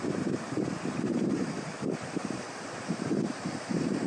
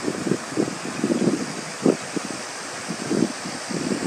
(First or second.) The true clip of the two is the second